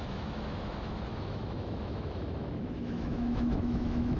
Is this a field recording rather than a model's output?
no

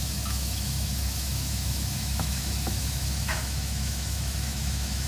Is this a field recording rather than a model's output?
no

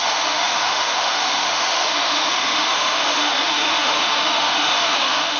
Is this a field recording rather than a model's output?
no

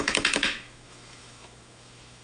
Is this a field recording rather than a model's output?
no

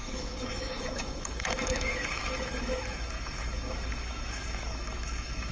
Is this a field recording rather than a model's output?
no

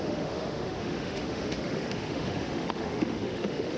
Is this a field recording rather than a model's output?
no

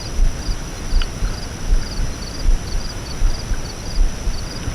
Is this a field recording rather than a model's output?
yes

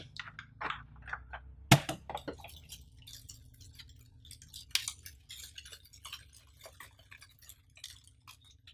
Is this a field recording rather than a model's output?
yes